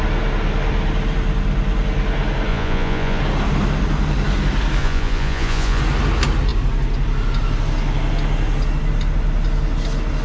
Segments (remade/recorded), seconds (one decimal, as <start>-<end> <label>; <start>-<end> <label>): 0.0-2.5 recorded; 2.5-3.2 remade; 3.2-4.8 recorded; 4.8-5.8 remade; 5.8-10.2 recorded